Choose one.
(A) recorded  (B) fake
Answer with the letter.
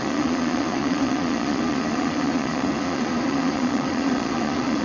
B